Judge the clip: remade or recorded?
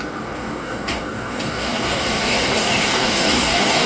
remade